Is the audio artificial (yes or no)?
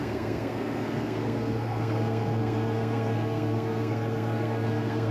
yes